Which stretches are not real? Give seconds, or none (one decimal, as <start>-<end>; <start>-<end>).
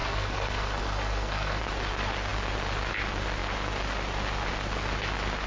0.0-1.6